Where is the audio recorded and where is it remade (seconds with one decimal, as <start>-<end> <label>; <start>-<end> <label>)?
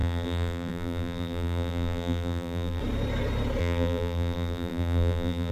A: 0.0-2.8 remade; 2.8-3.6 recorded; 3.6-5.5 remade